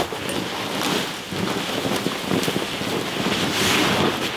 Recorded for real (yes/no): yes